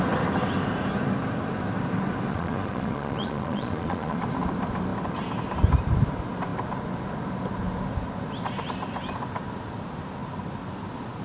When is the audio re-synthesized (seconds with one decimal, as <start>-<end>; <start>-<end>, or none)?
2.3-4.2